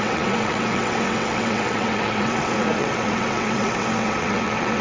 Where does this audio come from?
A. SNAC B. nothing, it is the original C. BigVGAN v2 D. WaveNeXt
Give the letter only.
D